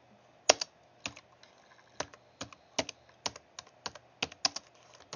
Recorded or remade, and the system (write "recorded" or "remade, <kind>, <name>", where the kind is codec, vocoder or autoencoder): recorded